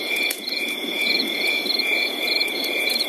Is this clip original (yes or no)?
no